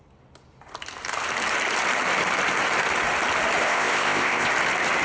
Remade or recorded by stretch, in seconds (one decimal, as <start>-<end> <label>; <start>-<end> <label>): 0.0-3.6 recorded; 3.6-4.5 remade; 4.5-5.0 recorded